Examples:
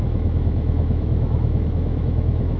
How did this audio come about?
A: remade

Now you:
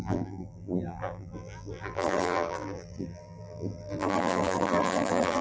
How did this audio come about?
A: remade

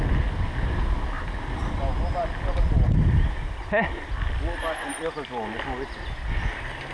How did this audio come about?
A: recorded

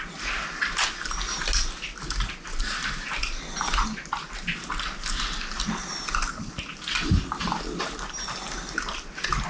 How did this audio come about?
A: recorded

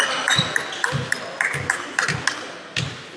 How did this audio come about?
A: recorded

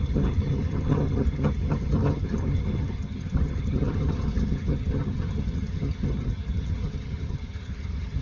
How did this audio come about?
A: remade